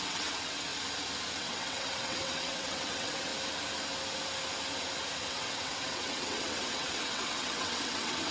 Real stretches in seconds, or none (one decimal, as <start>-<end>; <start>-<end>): 0.7-1.3; 3.3-5.2